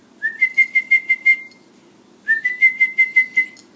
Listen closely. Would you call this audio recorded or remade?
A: recorded